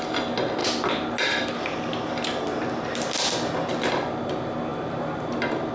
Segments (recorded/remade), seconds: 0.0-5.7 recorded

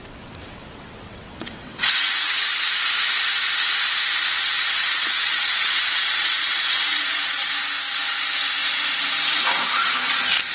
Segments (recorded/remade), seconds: 0.0-2.6 remade; 2.6-4.3 recorded; 4.3-7.5 remade; 7.5-10.5 recorded

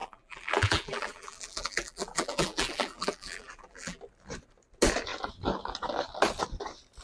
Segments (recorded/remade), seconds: 0.0-4.0 remade; 4.0-7.0 recorded

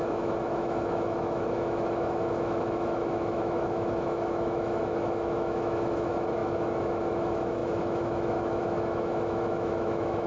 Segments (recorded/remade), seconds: 0.0-10.3 remade

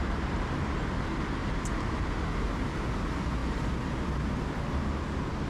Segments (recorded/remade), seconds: 0.0-1.4 recorded; 1.4-2.1 remade; 2.1-3.4 recorded; 3.4-4.6 remade; 4.6-5.5 recorded